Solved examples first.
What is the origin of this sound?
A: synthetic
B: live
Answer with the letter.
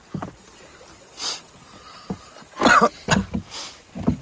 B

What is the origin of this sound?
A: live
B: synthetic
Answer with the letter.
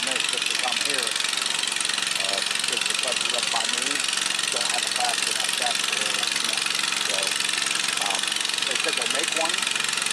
A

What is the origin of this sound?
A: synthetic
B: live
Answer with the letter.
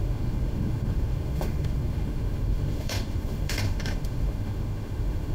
A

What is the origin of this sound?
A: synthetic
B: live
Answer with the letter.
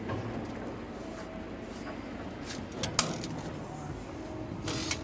B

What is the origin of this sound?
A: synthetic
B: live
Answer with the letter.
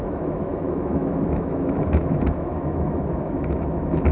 A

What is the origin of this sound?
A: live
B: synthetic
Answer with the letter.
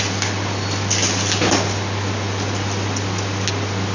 A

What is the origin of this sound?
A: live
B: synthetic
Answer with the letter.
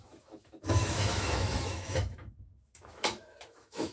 B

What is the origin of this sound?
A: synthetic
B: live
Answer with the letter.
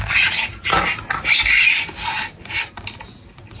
B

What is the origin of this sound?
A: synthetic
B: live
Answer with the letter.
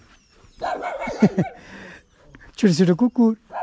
B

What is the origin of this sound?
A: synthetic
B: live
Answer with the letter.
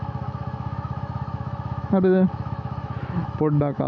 A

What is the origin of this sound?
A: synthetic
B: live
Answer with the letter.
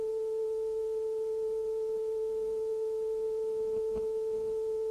B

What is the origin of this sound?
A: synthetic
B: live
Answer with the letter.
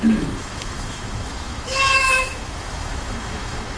A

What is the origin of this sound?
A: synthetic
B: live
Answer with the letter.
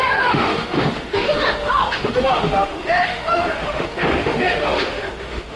A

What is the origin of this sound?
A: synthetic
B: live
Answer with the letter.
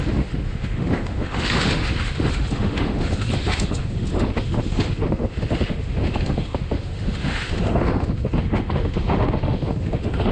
A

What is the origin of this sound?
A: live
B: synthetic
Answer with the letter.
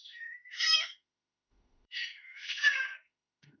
B